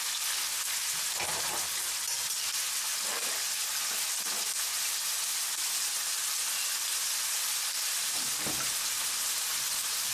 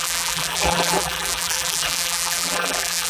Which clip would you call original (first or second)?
first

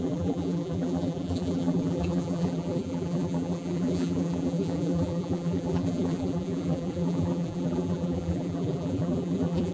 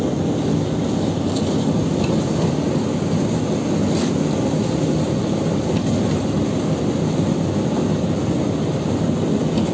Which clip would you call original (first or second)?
second